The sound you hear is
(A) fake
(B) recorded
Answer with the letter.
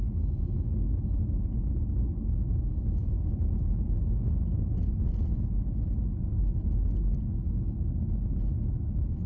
B